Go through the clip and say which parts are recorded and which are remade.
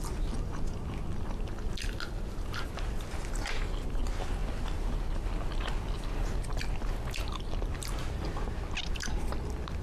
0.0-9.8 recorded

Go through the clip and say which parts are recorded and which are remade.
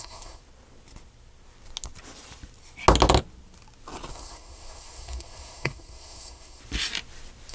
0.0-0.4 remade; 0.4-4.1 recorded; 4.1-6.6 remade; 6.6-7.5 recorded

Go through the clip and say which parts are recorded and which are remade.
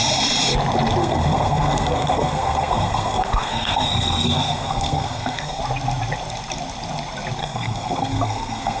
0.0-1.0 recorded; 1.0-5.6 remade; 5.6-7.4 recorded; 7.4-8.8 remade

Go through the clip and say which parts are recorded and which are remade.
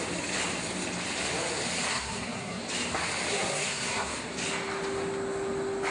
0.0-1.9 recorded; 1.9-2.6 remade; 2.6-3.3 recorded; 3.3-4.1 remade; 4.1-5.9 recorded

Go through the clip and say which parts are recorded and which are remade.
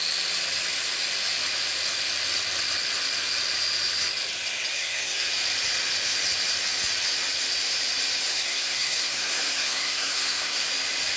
0.0-4.7 recorded; 4.7-5.3 remade; 5.3-8.3 recorded; 8.3-10.7 remade; 10.7-11.2 recorded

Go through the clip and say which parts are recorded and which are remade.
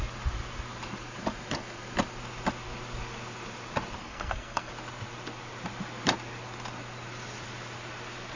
0.0-4.0 recorded; 4.0-4.7 remade; 4.7-8.4 recorded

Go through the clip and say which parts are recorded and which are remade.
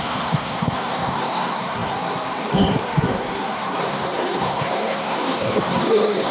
0.0-6.3 remade